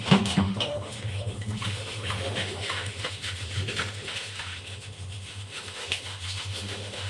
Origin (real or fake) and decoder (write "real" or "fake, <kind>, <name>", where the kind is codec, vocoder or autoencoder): fake, autoencoder, DAC-VAE